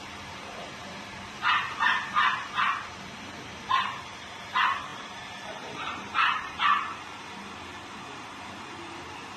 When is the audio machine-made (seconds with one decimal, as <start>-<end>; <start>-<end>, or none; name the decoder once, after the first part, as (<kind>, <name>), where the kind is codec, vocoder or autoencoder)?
0.0-9.4 (vocoder, BigVGAN v2)